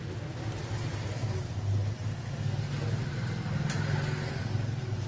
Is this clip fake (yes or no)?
no